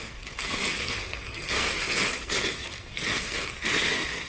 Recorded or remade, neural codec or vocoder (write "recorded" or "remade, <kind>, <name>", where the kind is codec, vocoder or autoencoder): remade, codec, SNAC